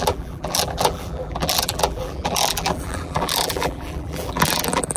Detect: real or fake fake